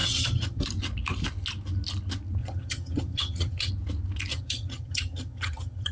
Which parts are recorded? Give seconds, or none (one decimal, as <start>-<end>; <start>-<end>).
0.6-2.4; 3.7-4.3